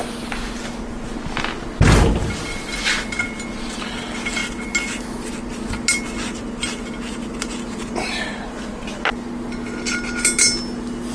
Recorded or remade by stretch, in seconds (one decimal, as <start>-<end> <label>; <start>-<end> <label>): 0.0-11.1 recorded